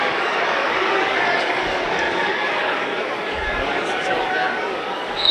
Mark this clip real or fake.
fake